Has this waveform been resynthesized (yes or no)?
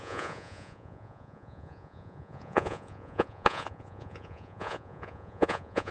yes